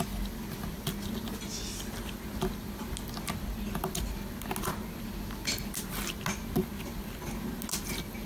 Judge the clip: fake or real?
real